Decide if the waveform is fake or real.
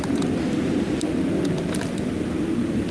real